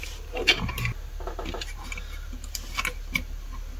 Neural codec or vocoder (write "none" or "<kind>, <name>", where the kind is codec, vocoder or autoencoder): none